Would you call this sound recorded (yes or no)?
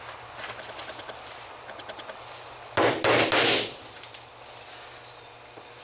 yes